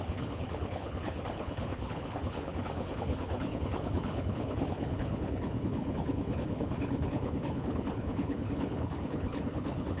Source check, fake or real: fake